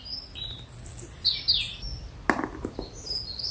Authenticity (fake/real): real